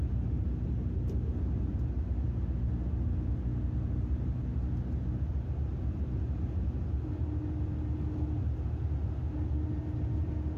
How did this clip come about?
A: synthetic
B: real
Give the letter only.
B